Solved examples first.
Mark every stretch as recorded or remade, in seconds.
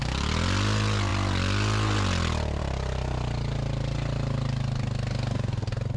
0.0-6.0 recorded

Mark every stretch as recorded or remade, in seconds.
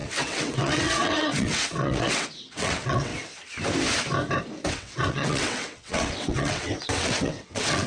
0.0-3.1 remade; 3.1-4.7 recorded; 4.7-7.9 remade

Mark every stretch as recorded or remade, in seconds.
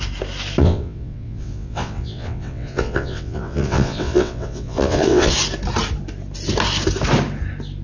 0.0-0.6 recorded; 0.6-5.3 remade; 5.3-7.8 recorded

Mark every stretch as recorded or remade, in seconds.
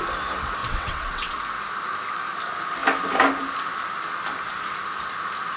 0.0-0.6 recorded; 0.6-1.4 remade; 1.4-5.6 recorded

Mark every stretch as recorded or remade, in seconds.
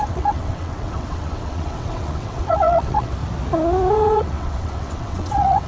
0.0-3.2 remade; 3.2-3.9 recorded; 3.9-5.7 remade